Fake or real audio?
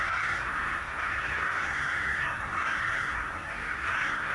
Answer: fake